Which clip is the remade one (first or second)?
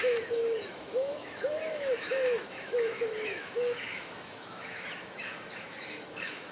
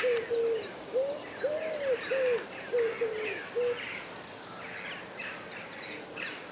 first